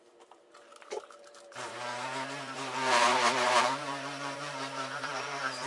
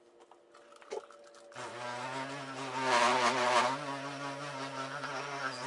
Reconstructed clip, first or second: first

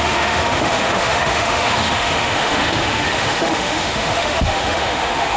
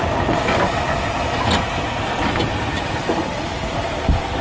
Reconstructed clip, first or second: first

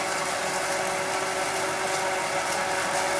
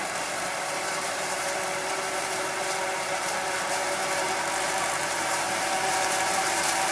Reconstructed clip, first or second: second